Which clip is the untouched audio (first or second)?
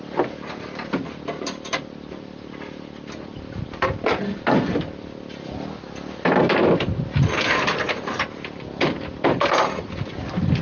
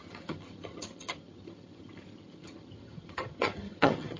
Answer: first